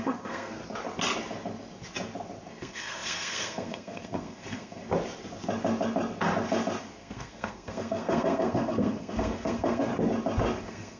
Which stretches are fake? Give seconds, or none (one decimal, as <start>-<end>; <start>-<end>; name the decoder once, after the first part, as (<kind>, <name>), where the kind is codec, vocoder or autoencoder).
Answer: 0.0-0.6 (codec, SNAC); 2.6-4.8; 6.8-9.9; 10.6-11.0